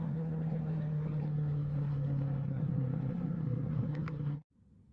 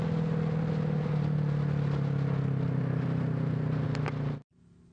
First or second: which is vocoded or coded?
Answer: first